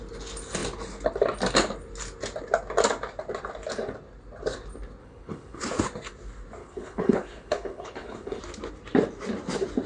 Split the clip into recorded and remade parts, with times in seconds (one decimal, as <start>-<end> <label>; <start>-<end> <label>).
0.0-5.0 recorded; 5.0-5.6 remade; 5.6-6.6 recorded; 6.6-8.4 remade; 8.4-9.9 recorded